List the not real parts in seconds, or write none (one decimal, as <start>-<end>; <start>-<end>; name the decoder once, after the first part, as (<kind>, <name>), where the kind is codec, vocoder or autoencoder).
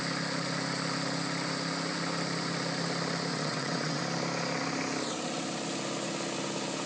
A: 3.3-4.0 (vocoder, WaveNeXt)